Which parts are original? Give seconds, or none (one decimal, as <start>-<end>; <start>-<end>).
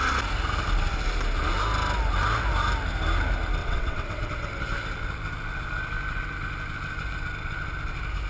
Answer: 0.0-3.6; 4.3-8.3